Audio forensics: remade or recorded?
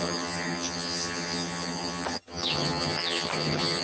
remade